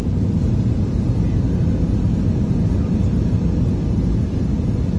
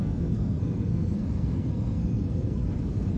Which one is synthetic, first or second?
second